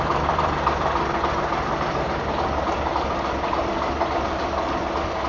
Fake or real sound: fake